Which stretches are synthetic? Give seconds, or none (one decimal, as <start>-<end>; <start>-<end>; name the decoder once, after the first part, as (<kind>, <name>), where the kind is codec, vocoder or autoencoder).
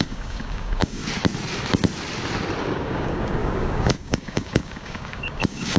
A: 0.0-1.0 (codec, DAC); 2.6-5.8